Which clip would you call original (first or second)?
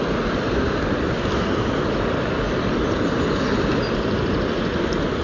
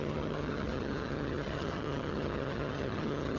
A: first